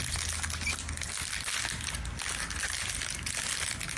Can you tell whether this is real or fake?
real